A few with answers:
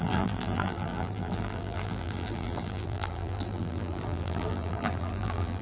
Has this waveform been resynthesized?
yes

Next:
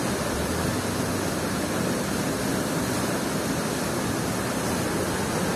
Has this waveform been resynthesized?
no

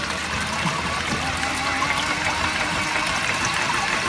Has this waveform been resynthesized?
no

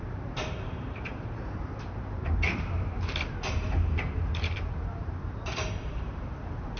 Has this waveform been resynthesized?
yes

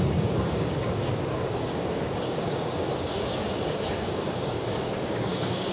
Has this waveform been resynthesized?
yes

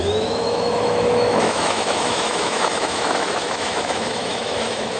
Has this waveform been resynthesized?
yes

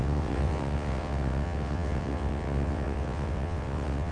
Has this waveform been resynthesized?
yes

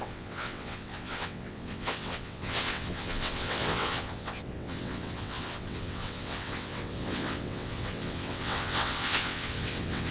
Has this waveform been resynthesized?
yes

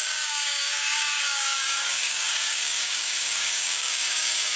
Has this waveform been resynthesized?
yes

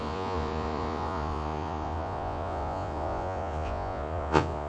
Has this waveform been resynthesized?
yes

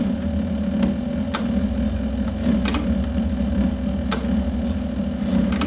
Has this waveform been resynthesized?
no